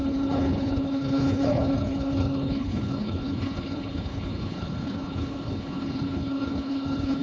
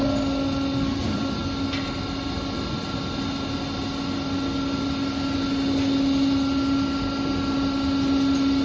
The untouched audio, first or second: second